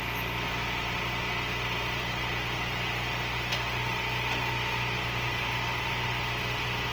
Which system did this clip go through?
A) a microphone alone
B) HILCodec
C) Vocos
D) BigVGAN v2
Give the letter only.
A